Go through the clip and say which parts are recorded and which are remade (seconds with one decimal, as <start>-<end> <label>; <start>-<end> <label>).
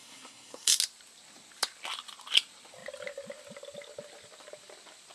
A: 0.0-0.8 remade; 0.8-5.1 recorded